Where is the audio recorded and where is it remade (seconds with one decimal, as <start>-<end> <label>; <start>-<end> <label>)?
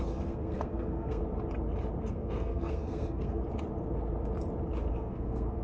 0.0-1.2 remade; 1.2-2.0 recorded; 2.0-3.4 remade; 3.4-4.9 recorded; 4.9-5.6 remade